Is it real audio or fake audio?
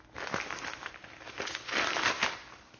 real